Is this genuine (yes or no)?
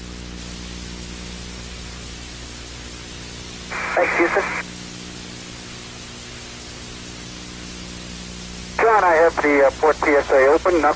yes